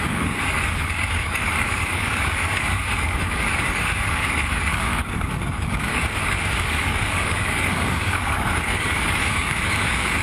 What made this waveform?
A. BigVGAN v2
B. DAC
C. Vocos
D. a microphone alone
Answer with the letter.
B